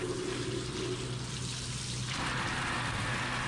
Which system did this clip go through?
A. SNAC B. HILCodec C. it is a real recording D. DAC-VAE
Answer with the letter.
C